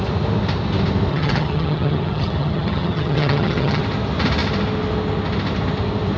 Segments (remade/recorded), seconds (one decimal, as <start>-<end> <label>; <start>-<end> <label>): 0.0-1.1 recorded; 1.1-3.8 remade; 3.8-6.2 recorded